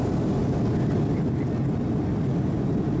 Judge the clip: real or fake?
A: real